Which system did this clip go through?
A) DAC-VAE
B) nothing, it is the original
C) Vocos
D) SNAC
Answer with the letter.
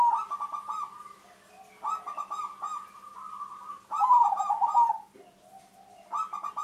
B